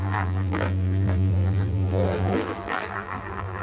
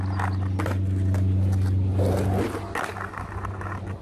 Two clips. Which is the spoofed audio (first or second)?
first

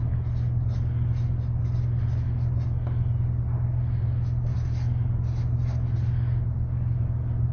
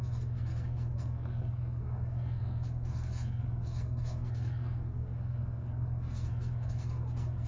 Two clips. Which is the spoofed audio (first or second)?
second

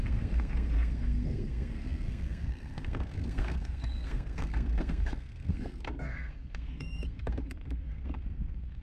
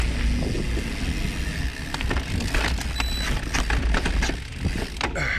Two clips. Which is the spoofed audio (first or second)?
first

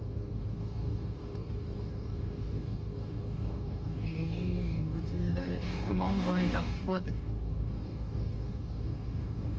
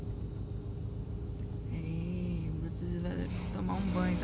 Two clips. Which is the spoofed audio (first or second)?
first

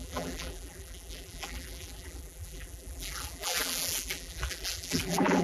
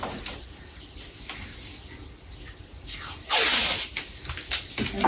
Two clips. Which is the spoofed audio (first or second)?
first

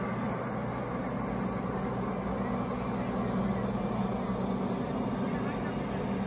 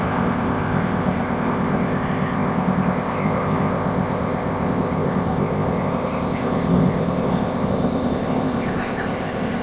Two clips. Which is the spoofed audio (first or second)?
second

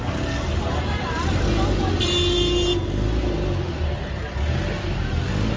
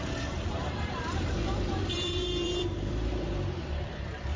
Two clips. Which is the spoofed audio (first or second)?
second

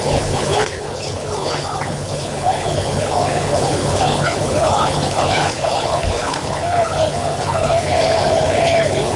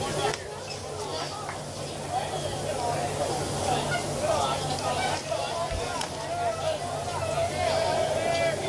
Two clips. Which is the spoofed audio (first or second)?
first